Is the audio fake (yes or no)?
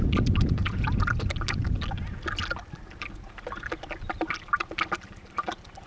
no